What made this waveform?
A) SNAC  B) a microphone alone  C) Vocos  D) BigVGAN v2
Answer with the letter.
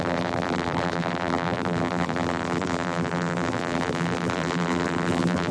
D